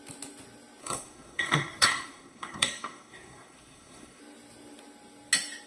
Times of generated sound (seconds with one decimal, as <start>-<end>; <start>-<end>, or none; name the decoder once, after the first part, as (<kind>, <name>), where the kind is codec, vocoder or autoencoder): 0.8-4.2 (codec, SNAC)